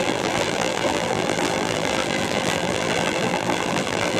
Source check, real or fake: fake